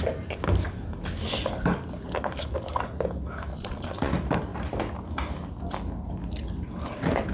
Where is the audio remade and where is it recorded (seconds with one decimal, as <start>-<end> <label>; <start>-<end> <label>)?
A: 0.0-3.5 recorded; 3.5-4.1 remade; 4.1-7.3 recorded